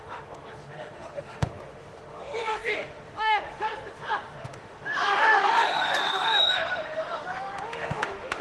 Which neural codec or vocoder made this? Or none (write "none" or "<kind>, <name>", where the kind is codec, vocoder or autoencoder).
autoencoder, DAC-VAE